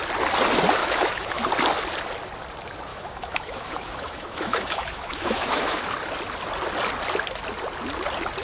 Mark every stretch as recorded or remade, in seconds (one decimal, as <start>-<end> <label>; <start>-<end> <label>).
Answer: 0.0-0.8 recorded; 0.8-1.4 remade; 1.4-2.9 recorded; 2.9-5.8 remade; 5.8-8.4 recorded